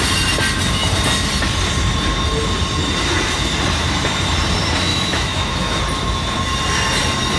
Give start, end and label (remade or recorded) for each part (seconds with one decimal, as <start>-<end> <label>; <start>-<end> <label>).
0.0-4.9 recorded; 4.9-5.8 remade; 5.8-7.4 recorded